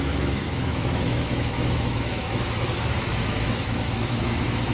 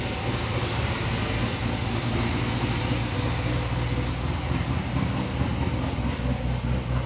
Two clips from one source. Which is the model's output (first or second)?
first